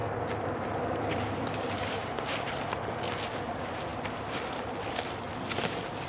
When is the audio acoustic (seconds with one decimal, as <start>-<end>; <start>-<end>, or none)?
none

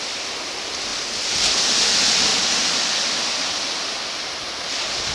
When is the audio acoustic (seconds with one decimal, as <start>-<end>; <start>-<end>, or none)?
0.0-2.3; 2.9-5.1

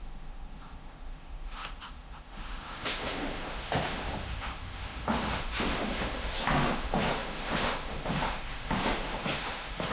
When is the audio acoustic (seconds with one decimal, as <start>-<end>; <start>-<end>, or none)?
none

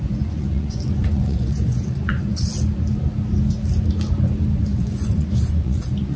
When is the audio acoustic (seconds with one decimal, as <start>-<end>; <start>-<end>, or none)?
2.5-4.6

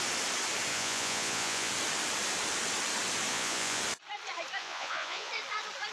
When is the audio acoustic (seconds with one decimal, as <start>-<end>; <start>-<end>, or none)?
0.0-0.7; 1.7-3.3; 3.8-4.6; 5.3-5.9